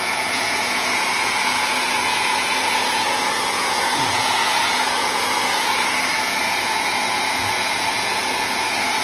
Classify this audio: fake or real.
fake